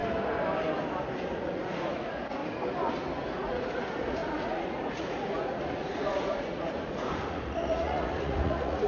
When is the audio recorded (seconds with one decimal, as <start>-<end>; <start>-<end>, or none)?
0.0-1.3; 2.4-3.2